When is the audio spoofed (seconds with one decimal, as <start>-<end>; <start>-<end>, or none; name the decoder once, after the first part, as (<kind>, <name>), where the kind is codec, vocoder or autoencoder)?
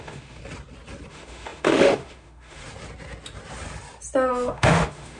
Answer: 0.0-0.4 (autoencoder, DAC-VAE); 1.1-2.6; 4.3-5.2